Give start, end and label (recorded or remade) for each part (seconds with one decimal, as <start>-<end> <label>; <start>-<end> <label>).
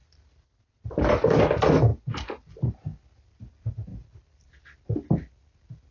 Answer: 0.0-5.9 recorded